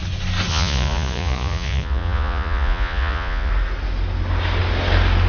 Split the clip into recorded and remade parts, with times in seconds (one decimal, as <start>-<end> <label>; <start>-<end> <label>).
0.0-0.5 recorded; 0.5-3.5 remade; 3.5-5.3 recorded